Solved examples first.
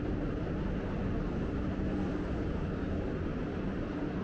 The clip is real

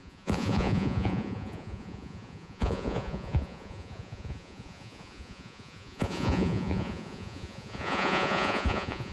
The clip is fake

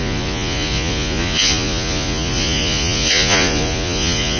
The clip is fake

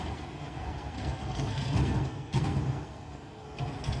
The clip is fake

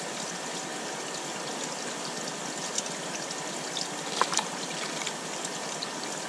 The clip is real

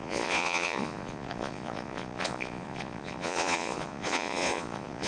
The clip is fake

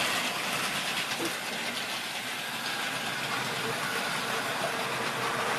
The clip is real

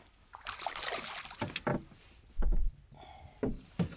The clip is real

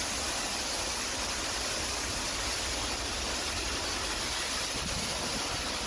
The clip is real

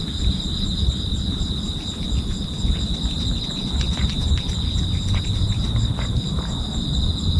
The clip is real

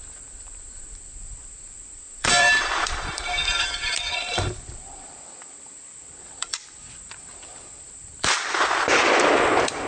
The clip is fake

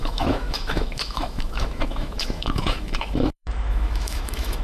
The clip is fake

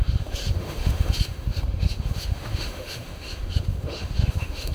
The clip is fake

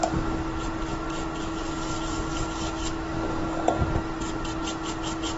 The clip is real